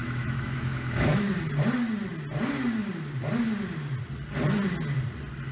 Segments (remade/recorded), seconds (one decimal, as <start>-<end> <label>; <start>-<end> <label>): 0.0-1.3 remade; 1.3-5.5 recorded

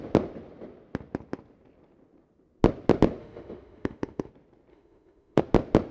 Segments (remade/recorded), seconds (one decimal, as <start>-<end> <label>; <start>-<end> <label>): 0.0-3.2 recorded; 3.2-4.3 remade; 4.3-4.7 recorded; 4.7-5.4 remade; 5.4-5.9 recorded

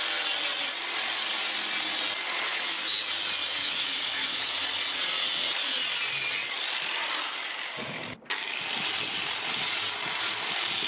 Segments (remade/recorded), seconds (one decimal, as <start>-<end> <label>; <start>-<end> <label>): 0.0-2.5 recorded; 2.5-3.1 remade; 3.1-3.6 recorded; 3.6-4.5 remade; 4.5-10.9 recorded

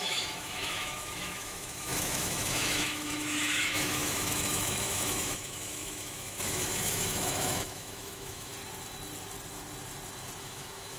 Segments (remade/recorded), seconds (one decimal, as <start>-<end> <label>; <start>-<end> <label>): 0.0-8.5 remade; 8.5-10.4 recorded; 10.4-11.0 remade

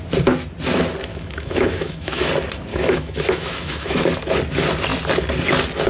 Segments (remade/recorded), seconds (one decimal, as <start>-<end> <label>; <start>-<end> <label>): 0.0-1.1 recorded; 1.1-2.3 remade; 2.3-2.7 recorded; 2.7-4.0 remade; 4.0-5.9 recorded

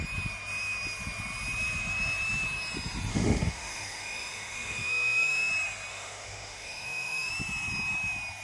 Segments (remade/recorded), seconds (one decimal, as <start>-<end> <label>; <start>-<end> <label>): 0.0-3.1 recorded; 3.1-5.5 remade; 5.5-5.9 recorded; 5.9-7.3 remade; 7.3-8.4 recorded

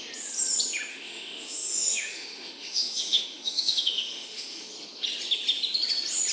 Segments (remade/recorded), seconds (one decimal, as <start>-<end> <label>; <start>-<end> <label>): 0.0-0.9 recorded; 0.9-4.7 remade; 4.7-6.3 recorded

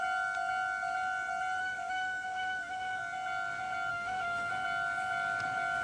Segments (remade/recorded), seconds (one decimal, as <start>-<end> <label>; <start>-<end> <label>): 0.0-1.6 recorded; 1.6-3.0 remade; 3.0-3.9 recorded; 3.9-4.5 remade; 4.5-5.8 recorded